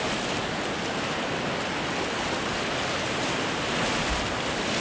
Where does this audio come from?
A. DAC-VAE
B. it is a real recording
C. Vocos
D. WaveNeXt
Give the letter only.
B